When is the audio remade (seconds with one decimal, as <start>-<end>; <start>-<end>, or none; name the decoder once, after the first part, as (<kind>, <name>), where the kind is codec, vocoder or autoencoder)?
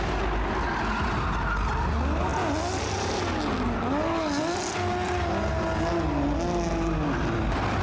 none